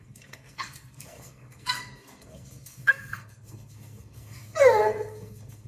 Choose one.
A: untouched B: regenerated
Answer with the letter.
B